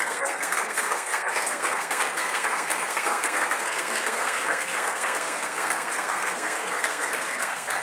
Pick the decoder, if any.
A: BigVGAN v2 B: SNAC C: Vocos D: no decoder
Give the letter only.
B